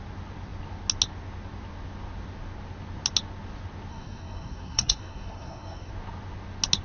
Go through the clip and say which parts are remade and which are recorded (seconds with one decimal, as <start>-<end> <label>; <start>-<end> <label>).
0.0-3.9 recorded; 3.9-5.9 remade; 5.9-6.8 recorded